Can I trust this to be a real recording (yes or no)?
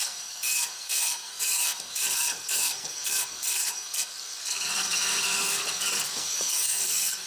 no